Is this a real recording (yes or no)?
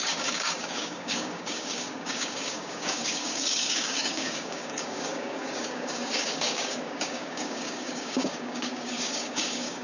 no